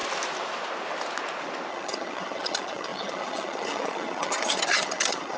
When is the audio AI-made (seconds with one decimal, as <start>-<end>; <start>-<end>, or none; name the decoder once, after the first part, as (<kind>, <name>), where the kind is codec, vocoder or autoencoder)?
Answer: 1.7-5.4 (vocoder, HiFi-GAN)